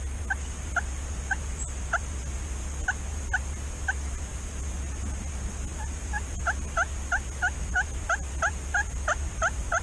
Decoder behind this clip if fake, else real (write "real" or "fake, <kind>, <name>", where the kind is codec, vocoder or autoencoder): real